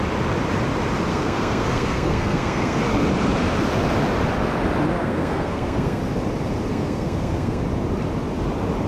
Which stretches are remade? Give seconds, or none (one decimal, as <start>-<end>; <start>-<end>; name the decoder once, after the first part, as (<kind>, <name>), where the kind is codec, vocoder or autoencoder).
1.1-2.8 (codec, SNAC); 5.0-6.0; 6.7-7.6